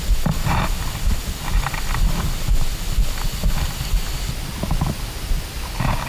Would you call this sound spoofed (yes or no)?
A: no